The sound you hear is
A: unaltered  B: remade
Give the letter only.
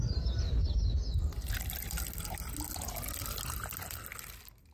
A